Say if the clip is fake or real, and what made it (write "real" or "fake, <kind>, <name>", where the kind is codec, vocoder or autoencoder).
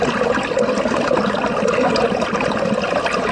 real